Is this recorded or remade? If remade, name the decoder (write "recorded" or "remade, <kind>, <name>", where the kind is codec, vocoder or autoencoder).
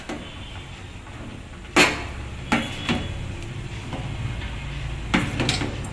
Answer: recorded